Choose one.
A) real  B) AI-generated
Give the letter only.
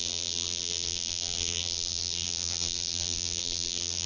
B